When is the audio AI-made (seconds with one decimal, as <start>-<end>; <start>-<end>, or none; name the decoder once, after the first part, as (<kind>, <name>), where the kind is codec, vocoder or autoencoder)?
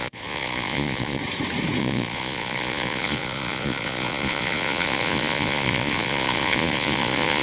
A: 0.0-1.2 (vocoder, Vocos); 1.8-7.4